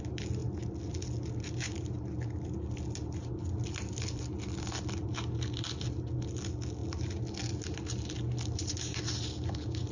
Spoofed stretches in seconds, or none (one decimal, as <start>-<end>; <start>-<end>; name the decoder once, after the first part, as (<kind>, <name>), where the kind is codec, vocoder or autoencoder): none